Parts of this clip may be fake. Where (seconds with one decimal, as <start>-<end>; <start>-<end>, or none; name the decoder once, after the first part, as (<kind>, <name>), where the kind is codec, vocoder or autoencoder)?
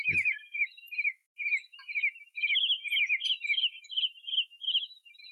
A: 0.0-2.8 (autoencoder, DAC-VAE); 3.4-5.3